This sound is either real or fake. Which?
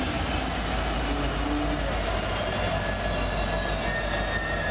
real